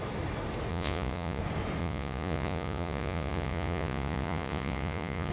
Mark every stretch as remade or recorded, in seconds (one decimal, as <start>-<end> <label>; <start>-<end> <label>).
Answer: 0.0-0.7 recorded; 0.7-1.4 remade; 1.4-1.8 recorded; 1.8-5.3 remade